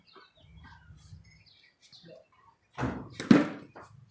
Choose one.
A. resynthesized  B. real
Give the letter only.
B